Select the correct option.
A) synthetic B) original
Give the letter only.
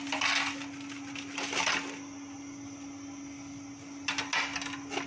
B